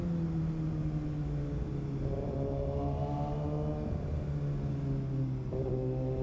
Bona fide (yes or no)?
yes